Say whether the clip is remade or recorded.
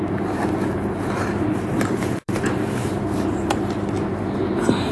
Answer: remade